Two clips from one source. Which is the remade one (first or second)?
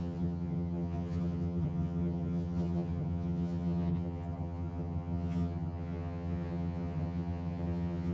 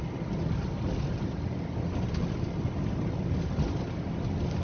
first